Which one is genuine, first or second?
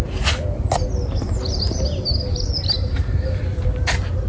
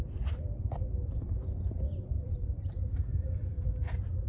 first